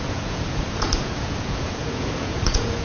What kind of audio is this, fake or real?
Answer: fake